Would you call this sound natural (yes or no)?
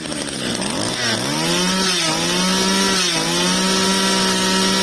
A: yes